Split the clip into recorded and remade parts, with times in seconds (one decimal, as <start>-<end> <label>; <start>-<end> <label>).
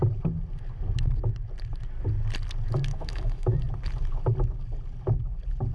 0.0-2.9 recorded; 2.9-3.6 remade; 3.6-5.7 recorded